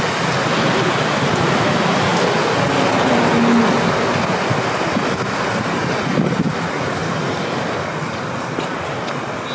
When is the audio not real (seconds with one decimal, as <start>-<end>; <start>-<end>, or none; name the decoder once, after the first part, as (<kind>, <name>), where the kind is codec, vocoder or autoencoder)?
none